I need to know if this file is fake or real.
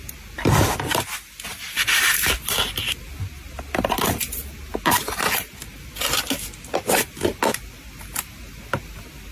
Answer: real